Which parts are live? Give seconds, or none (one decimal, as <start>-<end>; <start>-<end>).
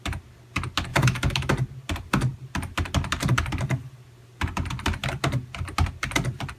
0.0-0.9; 1.5-6.6